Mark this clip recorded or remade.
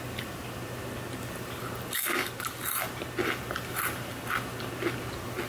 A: recorded